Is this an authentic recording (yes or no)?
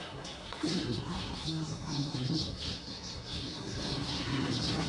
no